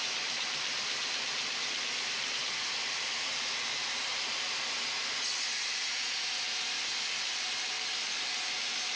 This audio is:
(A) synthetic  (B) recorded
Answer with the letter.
B